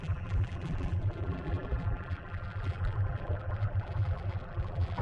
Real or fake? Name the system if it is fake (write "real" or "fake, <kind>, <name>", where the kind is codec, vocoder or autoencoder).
fake, vocoder, BigVGAN v2